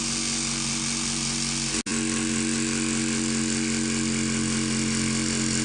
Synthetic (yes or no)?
no